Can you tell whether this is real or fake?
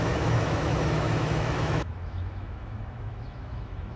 fake